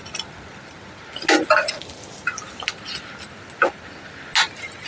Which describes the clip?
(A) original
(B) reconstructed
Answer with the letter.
A